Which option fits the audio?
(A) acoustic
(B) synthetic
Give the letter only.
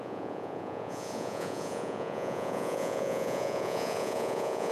B